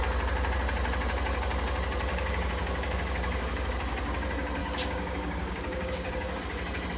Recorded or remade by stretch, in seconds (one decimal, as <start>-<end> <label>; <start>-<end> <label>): 0.0-2.1 recorded; 2.1-3.7 remade; 3.7-4.6 recorded; 4.6-6.4 remade; 6.4-7.0 recorded